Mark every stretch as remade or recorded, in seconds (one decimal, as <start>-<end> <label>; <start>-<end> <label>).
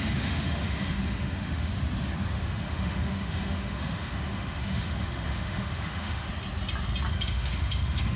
0.0-1.7 remade; 1.7-2.3 recorded; 2.3-6.3 remade; 6.3-7.1 recorded; 7.1-8.2 remade